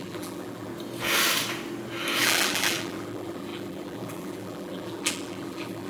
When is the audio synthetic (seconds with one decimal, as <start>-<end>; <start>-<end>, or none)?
0.0-0.7; 2.2-5.9